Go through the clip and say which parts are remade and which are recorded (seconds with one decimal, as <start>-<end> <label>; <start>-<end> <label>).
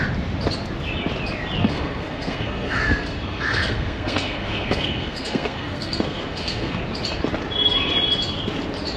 0.0-1.6 recorded; 1.6-6.8 remade; 6.8-9.0 recorded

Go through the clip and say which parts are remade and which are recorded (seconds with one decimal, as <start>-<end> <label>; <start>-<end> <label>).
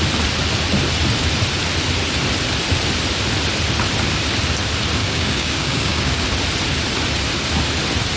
0.0-5.0 recorded; 5.0-6.2 remade; 6.2-8.2 recorded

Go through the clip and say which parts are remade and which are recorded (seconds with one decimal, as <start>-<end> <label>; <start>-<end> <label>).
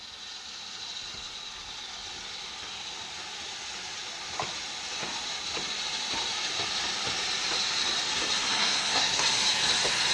0.0-8.5 recorded; 8.5-9.2 remade; 9.2-10.1 recorded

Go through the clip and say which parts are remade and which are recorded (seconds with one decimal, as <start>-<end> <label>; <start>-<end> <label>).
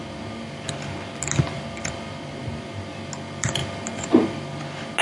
0.0-5.0 recorded